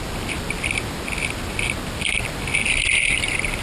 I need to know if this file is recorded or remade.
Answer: recorded